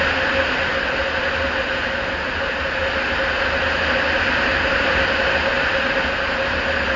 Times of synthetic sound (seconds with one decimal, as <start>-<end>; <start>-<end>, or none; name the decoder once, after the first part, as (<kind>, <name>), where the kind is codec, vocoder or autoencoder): none